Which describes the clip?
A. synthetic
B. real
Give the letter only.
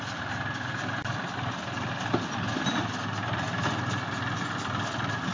B